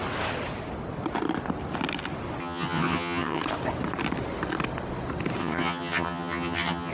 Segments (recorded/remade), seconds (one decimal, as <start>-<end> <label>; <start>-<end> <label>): 0.0-2.4 recorded; 2.4-3.4 remade; 3.4-5.4 recorded; 5.4-6.9 remade